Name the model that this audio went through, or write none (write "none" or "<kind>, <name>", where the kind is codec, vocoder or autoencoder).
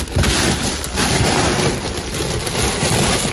none